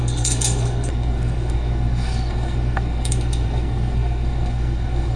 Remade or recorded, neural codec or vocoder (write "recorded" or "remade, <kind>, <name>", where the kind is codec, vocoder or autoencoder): remade, codec, SNAC